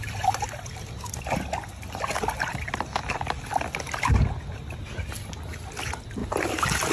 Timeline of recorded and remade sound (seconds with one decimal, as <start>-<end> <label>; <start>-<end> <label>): 0.0-6.9 recorded